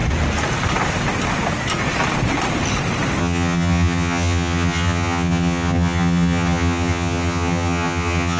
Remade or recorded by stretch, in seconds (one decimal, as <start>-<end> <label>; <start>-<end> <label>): 0.0-3.2 recorded; 3.2-8.4 remade